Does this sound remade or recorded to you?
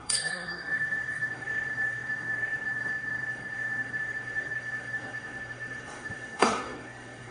remade